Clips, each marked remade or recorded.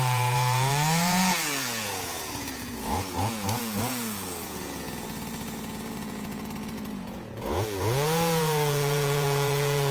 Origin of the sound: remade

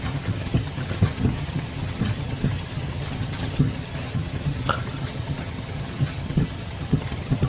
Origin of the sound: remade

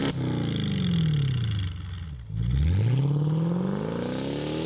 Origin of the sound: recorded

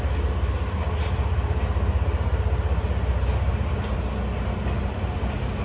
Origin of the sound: recorded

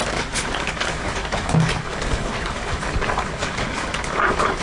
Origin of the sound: remade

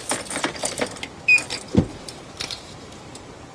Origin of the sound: recorded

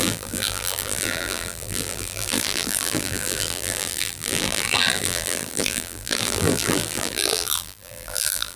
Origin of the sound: remade